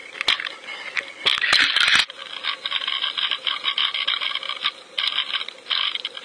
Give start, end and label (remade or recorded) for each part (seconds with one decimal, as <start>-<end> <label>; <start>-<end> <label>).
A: 0.0-6.2 recorded